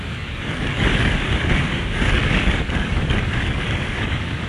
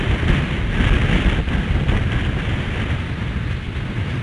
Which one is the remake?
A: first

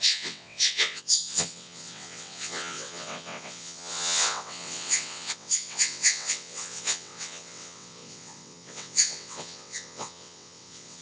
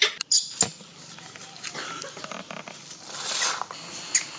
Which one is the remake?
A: first